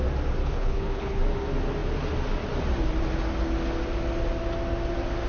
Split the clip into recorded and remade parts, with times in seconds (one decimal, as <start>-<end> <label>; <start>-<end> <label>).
0.0-0.4 recorded; 0.4-1.2 remade; 1.2-5.3 recorded